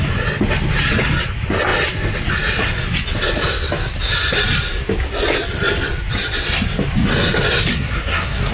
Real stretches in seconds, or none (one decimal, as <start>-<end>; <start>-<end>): 0.0-7.7